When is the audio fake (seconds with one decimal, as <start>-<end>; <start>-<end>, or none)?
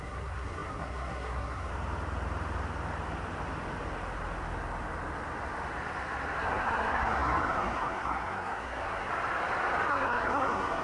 0.0-1.7; 6.4-9.1; 9.9-10.8